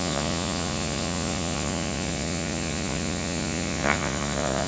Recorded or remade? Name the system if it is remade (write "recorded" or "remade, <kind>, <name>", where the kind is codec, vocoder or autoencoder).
remade, vocoder, Vocos